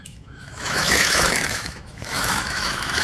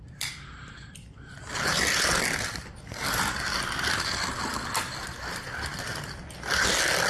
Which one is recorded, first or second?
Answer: second